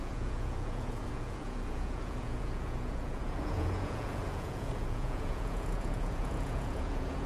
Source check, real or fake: fake